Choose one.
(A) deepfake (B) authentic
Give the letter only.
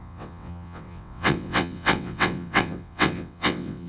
A